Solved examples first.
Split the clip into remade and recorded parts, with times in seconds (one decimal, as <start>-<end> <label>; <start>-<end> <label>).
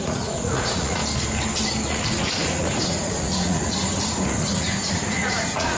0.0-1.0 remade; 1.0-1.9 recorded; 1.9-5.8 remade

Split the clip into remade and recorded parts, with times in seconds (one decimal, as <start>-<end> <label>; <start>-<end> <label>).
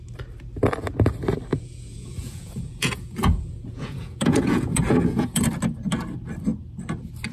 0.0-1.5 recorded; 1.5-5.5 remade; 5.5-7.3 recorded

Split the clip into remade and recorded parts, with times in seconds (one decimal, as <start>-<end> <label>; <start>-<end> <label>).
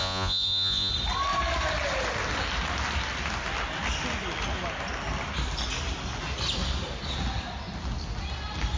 0.0-0.9 remade; 0.9-8.8 recorded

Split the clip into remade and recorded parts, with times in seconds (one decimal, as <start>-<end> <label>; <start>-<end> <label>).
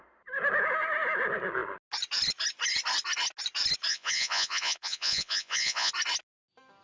0.0-3.9 recorded; 3.9-5.9 remade; 5.9-6.8 recorded